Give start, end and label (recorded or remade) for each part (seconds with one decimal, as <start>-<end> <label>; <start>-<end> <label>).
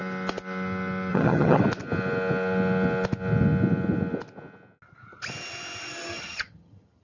0.0-1.1 recorded; 1.1-1.6 remade; 1.6-6.1 recorded; 6.1-7.0 remade